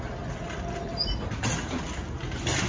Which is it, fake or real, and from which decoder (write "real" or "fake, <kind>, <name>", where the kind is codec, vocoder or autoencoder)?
real